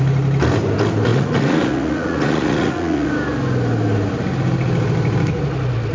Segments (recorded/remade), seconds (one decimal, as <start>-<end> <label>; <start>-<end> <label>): 0.0-1.1 recorded; 1.1-3.1 remade; 3.1-5.9 recorded